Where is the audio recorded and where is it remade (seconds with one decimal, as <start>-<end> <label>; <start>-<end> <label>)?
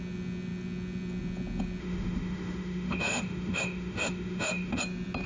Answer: 0.0-1.8 recorded; 1.8-4.8 remade; 4.8-5.3 recorded